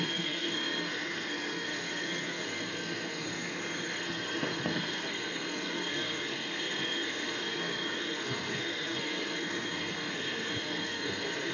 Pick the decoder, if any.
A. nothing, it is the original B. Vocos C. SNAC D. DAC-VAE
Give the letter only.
C